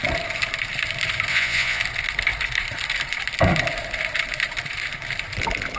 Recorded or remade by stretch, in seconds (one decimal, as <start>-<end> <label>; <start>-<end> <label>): 0.0-1.3 recorded; 1.3-1.8 remade; 1.8-5.8 recorded